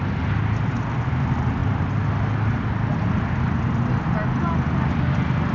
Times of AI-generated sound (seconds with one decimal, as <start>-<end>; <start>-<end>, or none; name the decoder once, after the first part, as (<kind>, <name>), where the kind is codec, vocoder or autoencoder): none